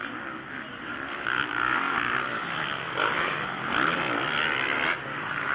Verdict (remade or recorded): recorded